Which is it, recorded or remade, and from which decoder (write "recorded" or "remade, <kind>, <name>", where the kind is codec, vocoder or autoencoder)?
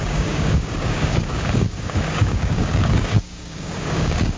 remade, codec, DAC